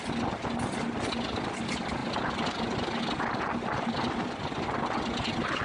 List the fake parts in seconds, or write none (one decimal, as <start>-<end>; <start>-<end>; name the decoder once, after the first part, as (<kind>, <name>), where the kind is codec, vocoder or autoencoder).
none